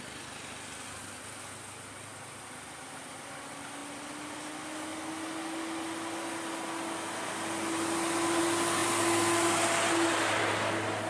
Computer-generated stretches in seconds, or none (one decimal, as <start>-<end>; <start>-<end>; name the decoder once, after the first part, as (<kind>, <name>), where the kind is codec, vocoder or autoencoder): none